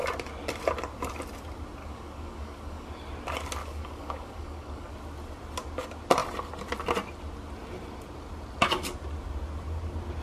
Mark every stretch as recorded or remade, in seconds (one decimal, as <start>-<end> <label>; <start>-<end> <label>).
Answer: 0.0-1.8 recorded; 1.8-2.9 remade; 2.9-3.6 recorded; 3.6-4.9 remade; 4.9-10.2 recorded